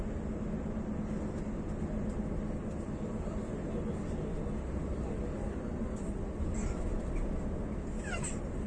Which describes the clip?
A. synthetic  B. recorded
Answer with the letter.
B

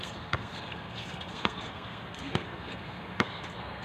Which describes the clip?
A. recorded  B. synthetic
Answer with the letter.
B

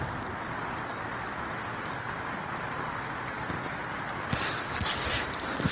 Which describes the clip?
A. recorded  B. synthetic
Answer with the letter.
A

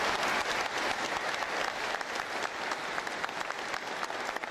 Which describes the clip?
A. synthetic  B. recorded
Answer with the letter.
B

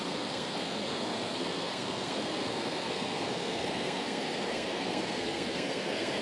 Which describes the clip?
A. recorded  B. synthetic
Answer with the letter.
B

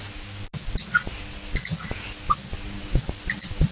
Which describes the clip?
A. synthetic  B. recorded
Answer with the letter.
B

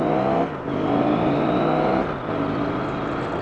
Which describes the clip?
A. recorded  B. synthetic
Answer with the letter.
A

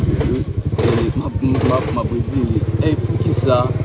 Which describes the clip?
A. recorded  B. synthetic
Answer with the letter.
A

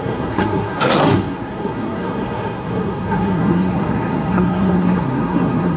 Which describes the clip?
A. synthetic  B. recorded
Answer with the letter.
A